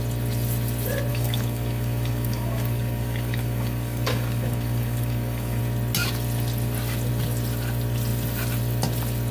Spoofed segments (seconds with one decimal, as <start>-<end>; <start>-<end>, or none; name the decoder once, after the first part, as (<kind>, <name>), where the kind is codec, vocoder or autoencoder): 1.1-5.6 (codec, DAC)